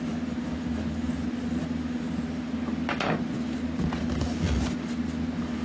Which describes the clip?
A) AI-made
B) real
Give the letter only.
B